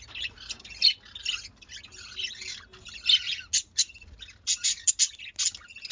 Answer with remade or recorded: recorded